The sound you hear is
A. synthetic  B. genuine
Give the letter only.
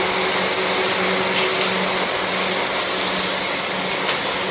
B